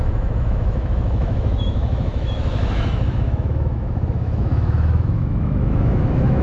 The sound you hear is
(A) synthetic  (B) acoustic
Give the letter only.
A